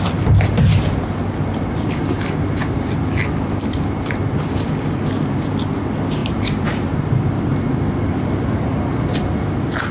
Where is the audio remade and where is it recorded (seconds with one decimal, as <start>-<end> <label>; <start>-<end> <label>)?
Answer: 0.0-6.2 recorded; 6.2-7.5 remade; 7.5-9.9 recorded